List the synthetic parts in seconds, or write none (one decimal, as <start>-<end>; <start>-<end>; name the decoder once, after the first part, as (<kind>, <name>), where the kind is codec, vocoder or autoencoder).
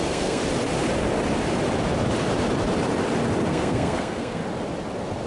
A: 0.0-0.4 (codec, SNAC); 3.5-4.4